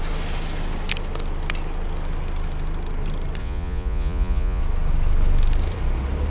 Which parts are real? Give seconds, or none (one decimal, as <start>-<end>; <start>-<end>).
0.0-3.4; 4.6-6.3